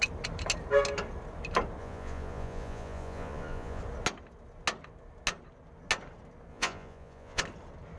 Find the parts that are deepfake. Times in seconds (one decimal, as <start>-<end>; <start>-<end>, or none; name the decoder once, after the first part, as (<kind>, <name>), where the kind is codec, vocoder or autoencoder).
1.8-3.8 (vocoder, Vocos); 6.5-7.4